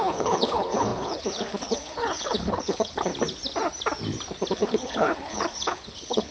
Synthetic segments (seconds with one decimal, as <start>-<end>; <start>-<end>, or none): 0.0-3.1; 4.5-6.3

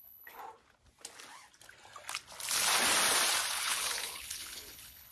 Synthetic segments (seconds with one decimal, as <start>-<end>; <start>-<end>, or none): 0.0-0.4; 3.5-5.1

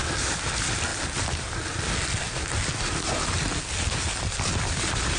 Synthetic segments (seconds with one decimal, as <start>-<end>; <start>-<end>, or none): none

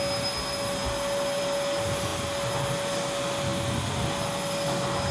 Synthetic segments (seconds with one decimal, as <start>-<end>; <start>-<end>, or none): none

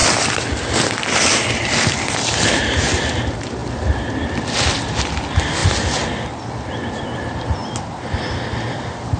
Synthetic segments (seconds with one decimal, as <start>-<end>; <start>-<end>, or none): none

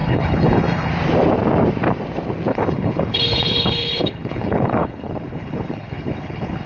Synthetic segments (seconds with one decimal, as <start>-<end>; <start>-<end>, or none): 0.0-0.9; 2.5-6.7

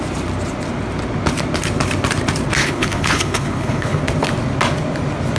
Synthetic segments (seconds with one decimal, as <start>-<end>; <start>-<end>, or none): 2.6-4.0

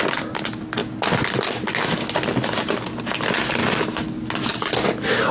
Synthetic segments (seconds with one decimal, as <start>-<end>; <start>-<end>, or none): none